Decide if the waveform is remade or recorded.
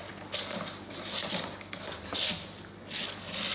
recorded